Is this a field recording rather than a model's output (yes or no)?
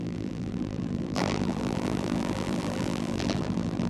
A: no